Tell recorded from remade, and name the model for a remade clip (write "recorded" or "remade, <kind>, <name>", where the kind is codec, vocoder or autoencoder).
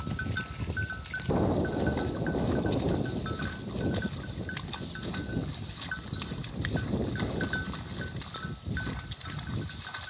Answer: recorded